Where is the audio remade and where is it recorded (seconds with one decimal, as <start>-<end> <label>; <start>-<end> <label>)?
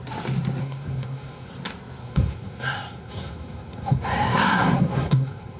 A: 0.0-0.6 recorded; 0.6-1.5 remade; 1.5-2.0 recorded; 2.0-5.6 remade